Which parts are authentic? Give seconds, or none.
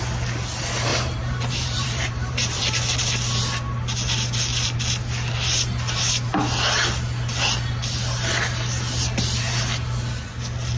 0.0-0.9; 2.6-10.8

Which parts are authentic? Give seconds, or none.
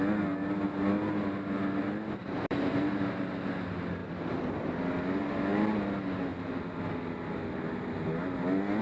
0.0-2.2; 3.3-4.0; 4.9-6.3; 6.9-8.8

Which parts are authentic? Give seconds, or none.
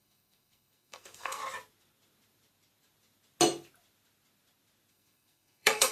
1.4-4.9